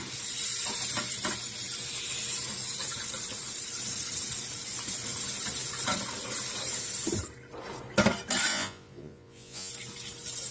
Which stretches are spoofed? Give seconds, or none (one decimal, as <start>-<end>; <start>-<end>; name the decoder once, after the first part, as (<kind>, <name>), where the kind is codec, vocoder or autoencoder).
8.5-9.7 (vocoder, Vocos)